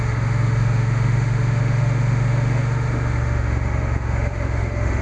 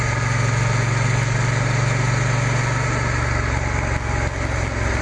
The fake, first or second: first